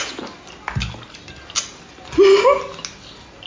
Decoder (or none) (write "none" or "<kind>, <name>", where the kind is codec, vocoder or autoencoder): none